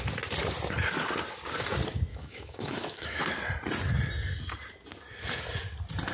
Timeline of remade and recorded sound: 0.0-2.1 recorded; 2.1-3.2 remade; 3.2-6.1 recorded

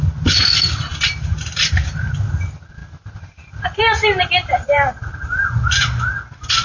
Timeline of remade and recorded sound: 0.0-2.8 recorded; 2.8-4.9 remade; 4.9-6.6 recorded

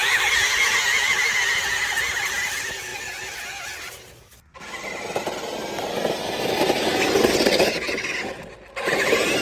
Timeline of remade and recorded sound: 0.0-9.4 recorded

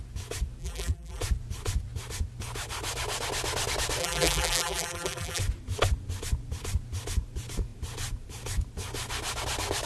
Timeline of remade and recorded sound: 0.0-0.6 recorded; 0.6-1.2 remade; 1.2-4.0 recorded; 4.0-5.4 remade; 5.4-9.9 recorded

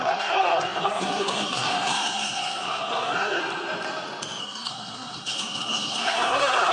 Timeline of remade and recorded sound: 0.0-3.4 remade; 3.4-4.4 recorded; 4.4-6.7 remade